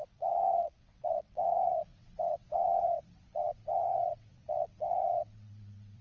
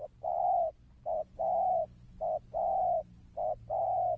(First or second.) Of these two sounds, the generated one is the first